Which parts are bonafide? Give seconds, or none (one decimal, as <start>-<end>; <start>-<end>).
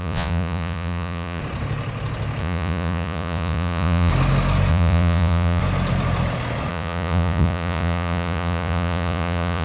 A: 1.4-2.4; 4.1-4.7; 5.6-6.7